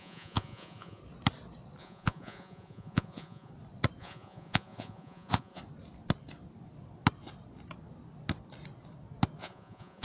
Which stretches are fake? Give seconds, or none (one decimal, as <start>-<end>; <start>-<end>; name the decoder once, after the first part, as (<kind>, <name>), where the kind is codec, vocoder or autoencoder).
0.0-1.0 (vocoder, Vocos); 1.8-3.5; 4.0-5.6; 9.4-10.0